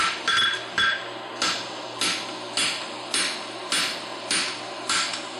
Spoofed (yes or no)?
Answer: no